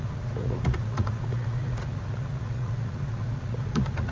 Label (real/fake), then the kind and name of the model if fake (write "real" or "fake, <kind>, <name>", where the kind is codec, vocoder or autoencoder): fake, vocoder, Vocos